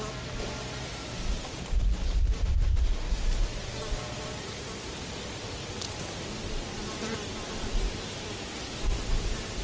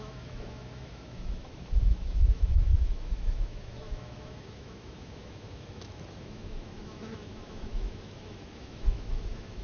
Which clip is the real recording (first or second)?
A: first